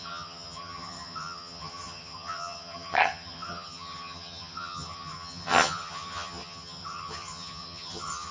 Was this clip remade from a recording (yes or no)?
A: yes